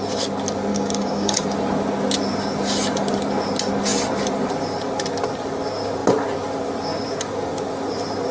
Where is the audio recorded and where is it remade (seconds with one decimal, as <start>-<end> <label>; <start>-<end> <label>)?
0.0-0.7 recorded; 0.7-1.4 remade; 1.4-8.3 recorded